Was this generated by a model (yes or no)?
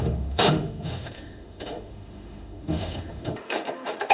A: yes